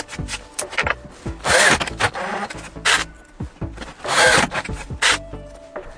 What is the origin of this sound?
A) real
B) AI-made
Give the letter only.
A